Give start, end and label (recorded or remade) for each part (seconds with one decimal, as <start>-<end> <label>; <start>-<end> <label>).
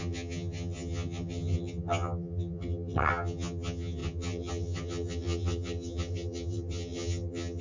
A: 0.0-7.6 remade